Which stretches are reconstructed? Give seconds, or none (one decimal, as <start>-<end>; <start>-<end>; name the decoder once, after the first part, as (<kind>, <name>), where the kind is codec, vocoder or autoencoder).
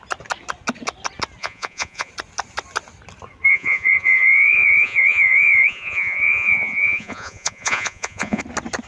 1.4-2.1 (vocoder, Vocos); 3.5-8.4